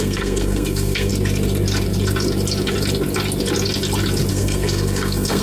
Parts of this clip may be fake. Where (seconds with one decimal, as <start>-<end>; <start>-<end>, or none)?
0.0-1.1; 4.3-5.4